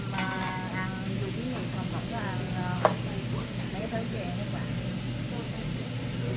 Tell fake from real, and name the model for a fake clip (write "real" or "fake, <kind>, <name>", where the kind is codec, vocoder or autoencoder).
real